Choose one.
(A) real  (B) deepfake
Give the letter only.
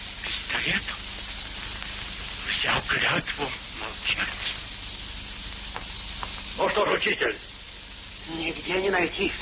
A